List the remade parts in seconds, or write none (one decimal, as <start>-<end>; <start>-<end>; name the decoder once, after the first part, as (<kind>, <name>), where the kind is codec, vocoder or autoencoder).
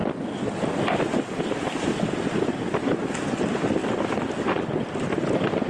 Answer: none